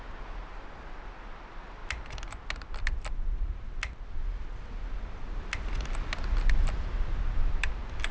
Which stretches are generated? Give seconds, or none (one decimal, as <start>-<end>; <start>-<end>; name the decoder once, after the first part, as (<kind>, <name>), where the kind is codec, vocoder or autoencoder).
none